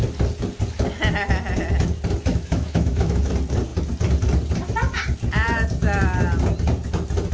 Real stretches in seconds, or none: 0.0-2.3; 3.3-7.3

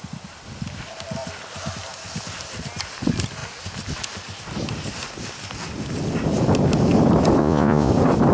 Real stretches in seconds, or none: 0.0-7.4; 7.9-8.3

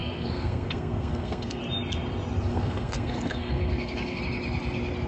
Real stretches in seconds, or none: 1.6-2.5; 4.2-5.1

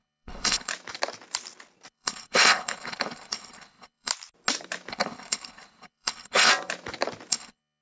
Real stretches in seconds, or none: 0.7-1.9; 4.1-4.9; 6.5-7.3

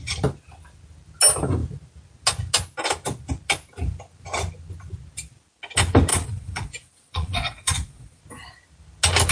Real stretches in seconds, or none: 0.0-6.1; 8.2-9.3